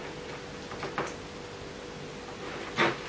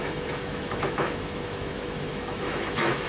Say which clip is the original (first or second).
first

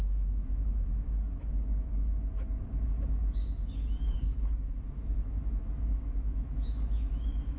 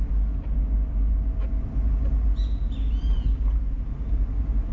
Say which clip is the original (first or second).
second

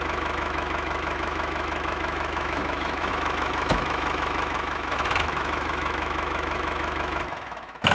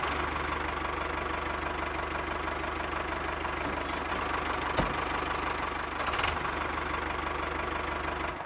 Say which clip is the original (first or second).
second